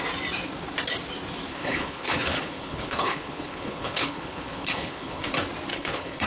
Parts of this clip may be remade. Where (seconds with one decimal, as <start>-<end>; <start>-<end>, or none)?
1.5-5.3; 5.7-6.3